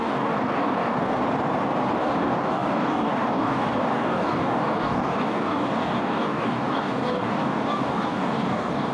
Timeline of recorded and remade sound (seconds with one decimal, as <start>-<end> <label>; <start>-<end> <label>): 0.0-1.2 remade; 1.2-2.0 recorded; 2.0-8.9 remade